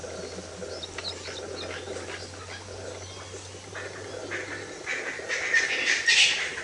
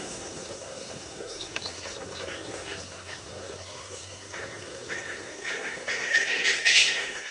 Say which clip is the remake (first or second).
second